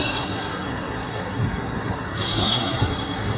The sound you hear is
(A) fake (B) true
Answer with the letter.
A